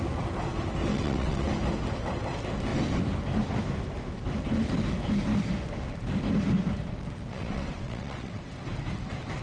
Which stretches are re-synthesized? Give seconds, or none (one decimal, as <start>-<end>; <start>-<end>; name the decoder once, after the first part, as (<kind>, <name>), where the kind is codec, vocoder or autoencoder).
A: 0.9-1.5 (vocoder, WaveNeXt); 7.3-8.4